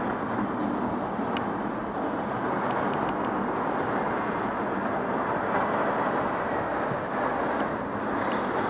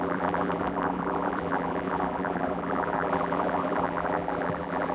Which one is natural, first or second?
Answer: first